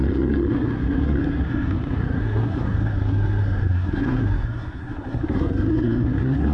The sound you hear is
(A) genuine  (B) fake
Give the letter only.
B